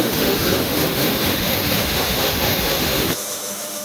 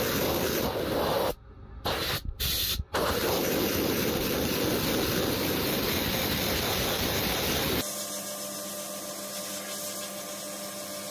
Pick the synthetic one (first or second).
first